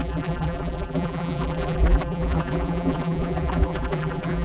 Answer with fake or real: fake